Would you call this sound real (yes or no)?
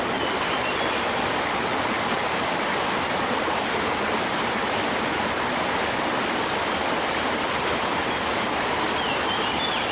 yes